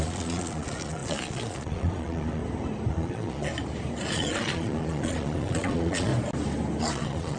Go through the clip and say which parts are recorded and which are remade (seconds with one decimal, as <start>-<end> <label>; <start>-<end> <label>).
0.0-2.4 remade; 2.4-2.9 recorded; 2.9-3.5 remade; 3.5-4.1 recorded; 4.1-6.1 remade; 6.1-6.8 recorded; 6.8-7.4 remade